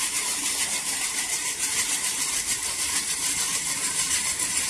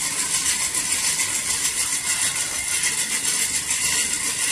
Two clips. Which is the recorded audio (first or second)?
second